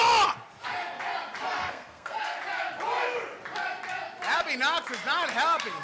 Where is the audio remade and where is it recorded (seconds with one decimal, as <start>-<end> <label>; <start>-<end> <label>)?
0.0-1.6 recorded; 1.6-2.4 remade; 2.4-5.8 recorded